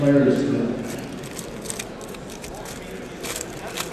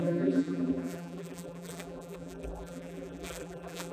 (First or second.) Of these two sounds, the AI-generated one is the second